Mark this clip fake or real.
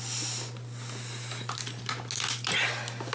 real